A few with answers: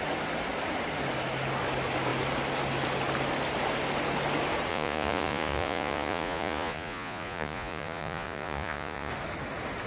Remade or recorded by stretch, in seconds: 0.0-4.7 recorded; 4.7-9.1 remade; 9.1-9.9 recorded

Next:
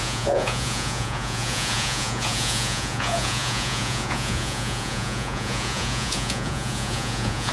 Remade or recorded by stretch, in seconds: 0.0-7.5 remade

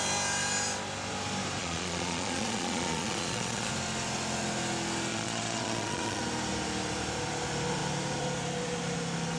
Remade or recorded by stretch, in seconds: 0.0-1.6 recorded; 1.6-3.7 remade; 3.7-5.1 recorded; 5.1-6.2 remade; 6.2-9.4 recorded